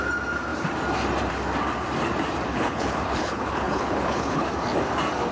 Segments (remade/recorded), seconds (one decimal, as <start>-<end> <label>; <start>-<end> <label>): 0.0-2.5 recorded; 2.5-4.5 remade; 4.5-5.3 recorded